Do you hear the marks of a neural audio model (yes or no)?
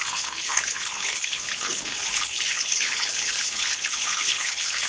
yes